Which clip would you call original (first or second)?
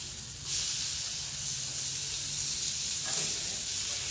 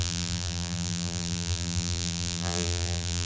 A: first